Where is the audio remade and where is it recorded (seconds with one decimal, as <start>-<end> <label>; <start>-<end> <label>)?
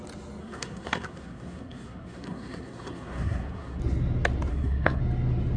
0.0-0.4 recorded; 0.4-3.8 remade; 3.8-4.5 recorded; 4.5-5.0 remade; 5.0-5.6 recorded